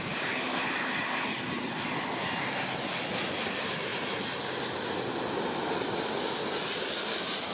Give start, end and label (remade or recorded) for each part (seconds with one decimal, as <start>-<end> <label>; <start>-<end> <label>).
0.0-7.5 recorded